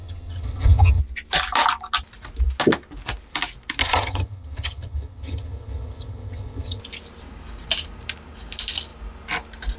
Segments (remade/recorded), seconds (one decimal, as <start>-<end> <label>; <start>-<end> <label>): 0.0-1.0 remade; 1.0-3.8 recorded; 3.8-6.8 remade; 6.8-9.8 recorded